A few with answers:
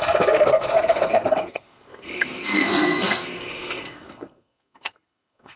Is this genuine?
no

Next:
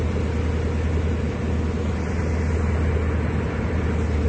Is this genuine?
yes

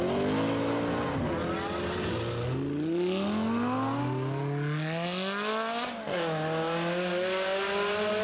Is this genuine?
yes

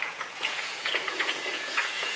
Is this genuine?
no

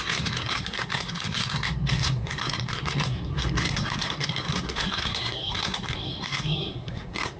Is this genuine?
no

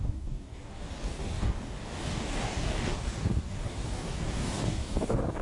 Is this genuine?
no